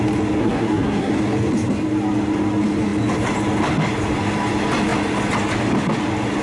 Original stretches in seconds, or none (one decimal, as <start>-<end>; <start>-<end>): 0.0-0.4; 1.1-6.4